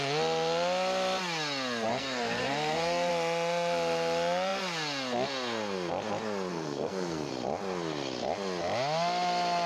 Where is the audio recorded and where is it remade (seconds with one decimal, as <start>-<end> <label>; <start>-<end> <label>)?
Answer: 0.0-1.9 recorded; 1.9-3.1 remade; 3.1-6.5 recorded; 6.5-7.3 remade; 7.3-9.7 recorded